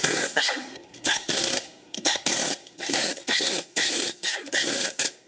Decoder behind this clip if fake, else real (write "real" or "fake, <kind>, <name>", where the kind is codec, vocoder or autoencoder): fake, codec, SNAC